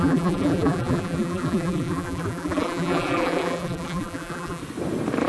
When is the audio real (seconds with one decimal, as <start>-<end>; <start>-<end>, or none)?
4.6-5.3